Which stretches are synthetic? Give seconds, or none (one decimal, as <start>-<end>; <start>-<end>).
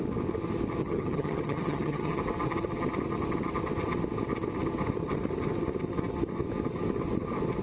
0.8-2.2